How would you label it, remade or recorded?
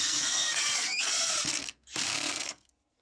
remade